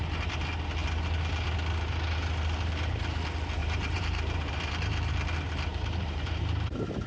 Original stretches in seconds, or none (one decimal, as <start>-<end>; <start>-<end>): 0.0-3.6; 5.1-5.7; 6.4-7.1